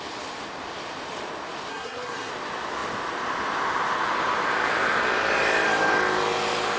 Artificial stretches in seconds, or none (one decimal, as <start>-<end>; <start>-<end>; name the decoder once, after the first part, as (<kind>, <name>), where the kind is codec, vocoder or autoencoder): 1.7-2.3 (codec, SNAC)